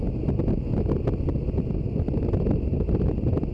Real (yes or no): yes